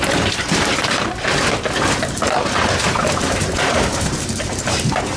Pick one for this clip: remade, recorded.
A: remade